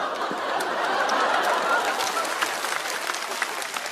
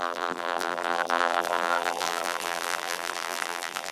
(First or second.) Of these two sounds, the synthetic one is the second